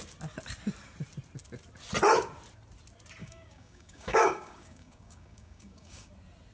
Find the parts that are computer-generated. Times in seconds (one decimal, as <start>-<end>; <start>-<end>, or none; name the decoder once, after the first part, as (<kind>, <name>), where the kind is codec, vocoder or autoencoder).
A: 3.2-6.1 (codec, DAC)